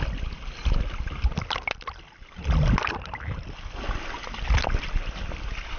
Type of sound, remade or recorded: recorded